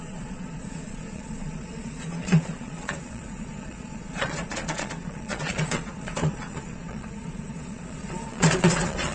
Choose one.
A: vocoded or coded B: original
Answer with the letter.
A